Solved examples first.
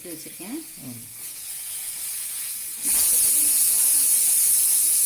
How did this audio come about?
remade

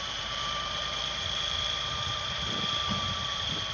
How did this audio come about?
remade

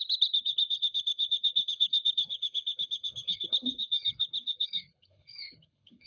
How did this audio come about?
remade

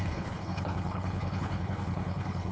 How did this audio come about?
remade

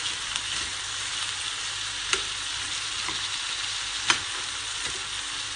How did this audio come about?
recorded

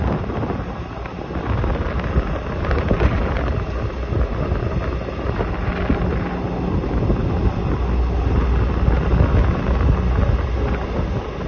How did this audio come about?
recorded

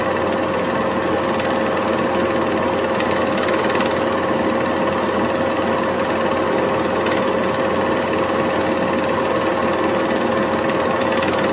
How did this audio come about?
recorded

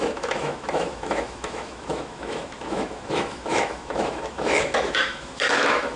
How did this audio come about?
remade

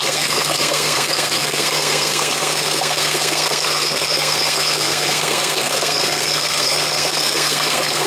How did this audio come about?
remade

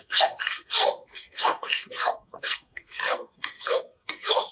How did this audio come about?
remade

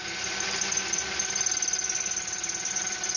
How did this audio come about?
recorded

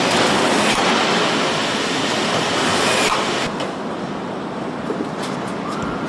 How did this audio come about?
recorded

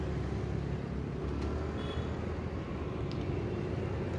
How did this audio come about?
recorded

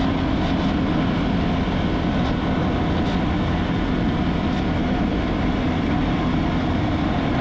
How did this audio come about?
recorded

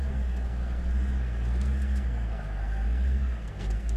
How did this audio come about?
remade